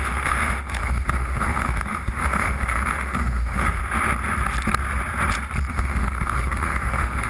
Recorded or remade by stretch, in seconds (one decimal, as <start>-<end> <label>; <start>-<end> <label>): 0.0-3.8 remade; 3.8-5.7 recorded; 5.7-7.3 remade